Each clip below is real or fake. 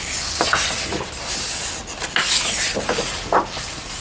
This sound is real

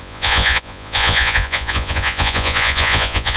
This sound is fake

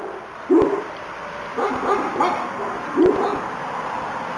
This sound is real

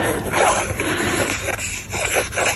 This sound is real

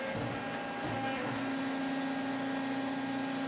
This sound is real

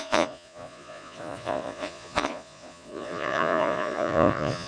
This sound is fake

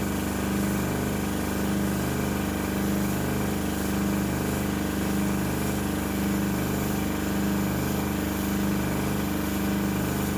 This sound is real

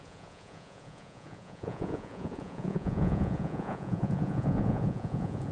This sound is fake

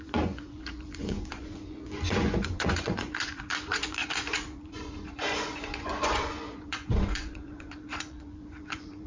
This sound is fake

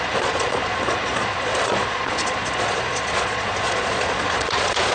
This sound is fake